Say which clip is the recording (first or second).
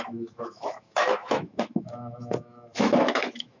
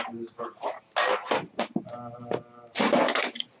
second